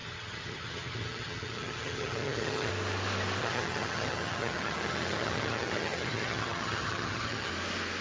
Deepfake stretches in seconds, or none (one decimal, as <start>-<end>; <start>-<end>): 0.0-2.7; 3.4-7.5